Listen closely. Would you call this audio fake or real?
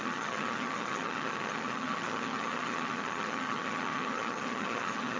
fake